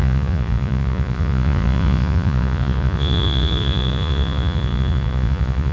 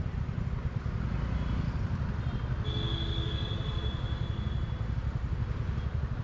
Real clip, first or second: second